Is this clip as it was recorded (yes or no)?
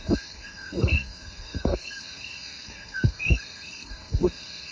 no